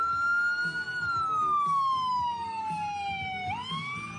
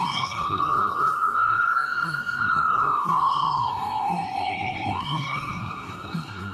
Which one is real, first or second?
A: first